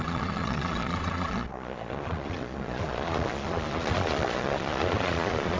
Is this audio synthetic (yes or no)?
yes